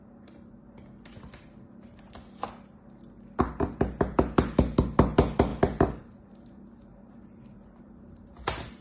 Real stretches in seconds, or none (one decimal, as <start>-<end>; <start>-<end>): 0.0-8.8